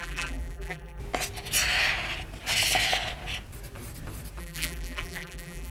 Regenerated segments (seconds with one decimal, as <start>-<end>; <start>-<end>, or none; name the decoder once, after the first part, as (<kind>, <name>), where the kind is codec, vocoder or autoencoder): 0.0-1.0 (vocoder, BigVGAN v2); 4.4-5.7